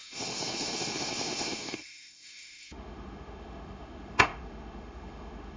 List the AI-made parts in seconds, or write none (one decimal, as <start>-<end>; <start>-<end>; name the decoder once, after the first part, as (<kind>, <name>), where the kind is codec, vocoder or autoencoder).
0.0-5.6 (autoencoder, DAC-VAE)